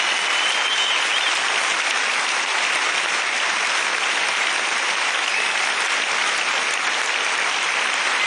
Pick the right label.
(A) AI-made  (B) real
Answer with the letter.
B